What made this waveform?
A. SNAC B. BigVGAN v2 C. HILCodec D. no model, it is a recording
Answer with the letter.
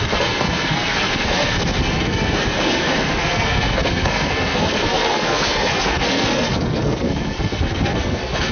A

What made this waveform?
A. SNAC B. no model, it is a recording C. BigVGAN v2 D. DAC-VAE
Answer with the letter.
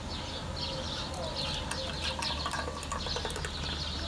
B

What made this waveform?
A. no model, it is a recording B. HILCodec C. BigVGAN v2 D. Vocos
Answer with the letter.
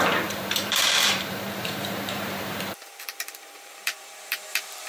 C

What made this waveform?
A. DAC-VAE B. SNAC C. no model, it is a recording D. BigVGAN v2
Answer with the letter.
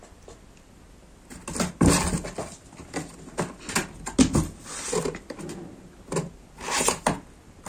C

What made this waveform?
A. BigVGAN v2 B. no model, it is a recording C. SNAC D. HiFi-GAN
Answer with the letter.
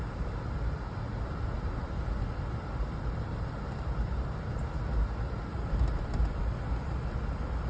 B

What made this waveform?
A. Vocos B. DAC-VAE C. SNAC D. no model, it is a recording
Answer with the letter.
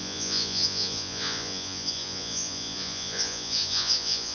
A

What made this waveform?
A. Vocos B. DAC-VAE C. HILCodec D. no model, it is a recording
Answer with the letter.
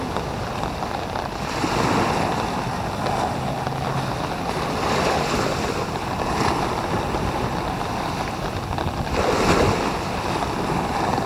D